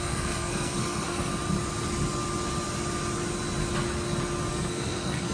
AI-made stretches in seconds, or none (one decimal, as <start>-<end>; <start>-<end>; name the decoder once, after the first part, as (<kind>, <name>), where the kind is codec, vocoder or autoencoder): 0.0-1.3 (codec, SNAC); 4.5-5.3